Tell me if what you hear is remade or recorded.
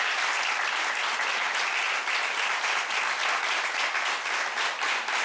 recorded